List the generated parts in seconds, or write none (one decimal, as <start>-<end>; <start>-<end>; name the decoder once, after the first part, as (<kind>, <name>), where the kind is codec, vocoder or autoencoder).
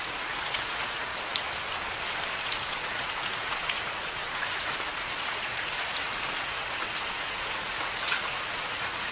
0.0-1.1 (vocoder, Vocos); 2.3-9.1